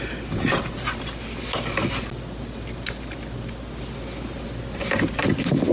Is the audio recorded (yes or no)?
yes